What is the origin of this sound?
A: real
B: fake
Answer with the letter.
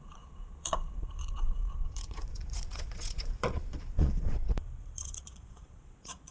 B